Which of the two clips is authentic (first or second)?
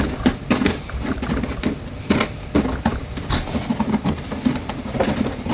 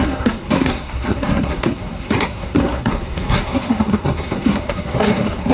first